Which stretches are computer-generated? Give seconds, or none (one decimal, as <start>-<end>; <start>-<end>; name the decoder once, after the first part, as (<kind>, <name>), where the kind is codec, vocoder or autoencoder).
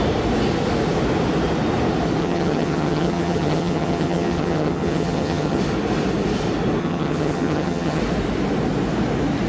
2.2-5.6 (vocoder, HiFi-GAN); 6.8-8.0